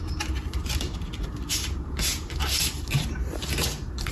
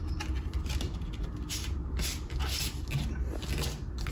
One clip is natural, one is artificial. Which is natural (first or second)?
second